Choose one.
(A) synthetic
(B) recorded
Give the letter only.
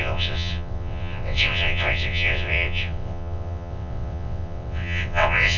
A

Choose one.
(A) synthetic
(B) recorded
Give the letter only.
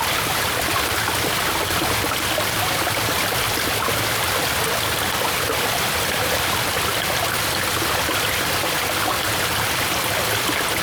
B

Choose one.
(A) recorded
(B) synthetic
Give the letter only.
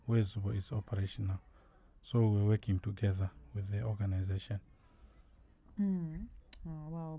A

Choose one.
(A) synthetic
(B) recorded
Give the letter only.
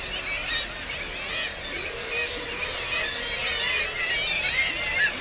B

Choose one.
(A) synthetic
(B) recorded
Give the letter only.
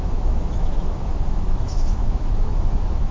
A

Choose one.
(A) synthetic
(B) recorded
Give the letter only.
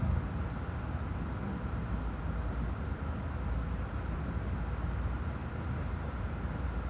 B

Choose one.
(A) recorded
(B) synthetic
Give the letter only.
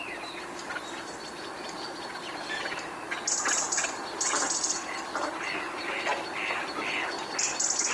A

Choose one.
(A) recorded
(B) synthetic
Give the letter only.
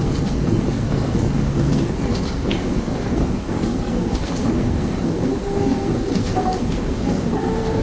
B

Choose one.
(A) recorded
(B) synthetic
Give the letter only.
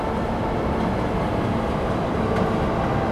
A